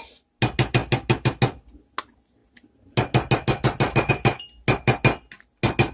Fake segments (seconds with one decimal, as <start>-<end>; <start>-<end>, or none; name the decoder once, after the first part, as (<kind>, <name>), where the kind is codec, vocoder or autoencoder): none